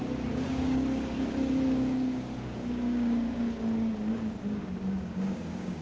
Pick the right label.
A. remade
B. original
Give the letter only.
A